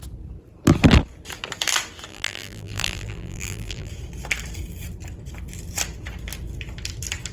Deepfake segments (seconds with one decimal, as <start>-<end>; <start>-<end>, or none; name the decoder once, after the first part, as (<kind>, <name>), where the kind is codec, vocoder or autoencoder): 2.1-3.9 (vocoder, BigVGAN v2)